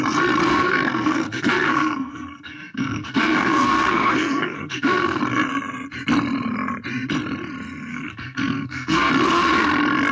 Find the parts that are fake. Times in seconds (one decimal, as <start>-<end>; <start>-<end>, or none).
0.5-5.2; 7.9-9.1